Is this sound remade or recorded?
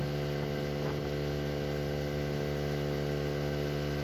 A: recorded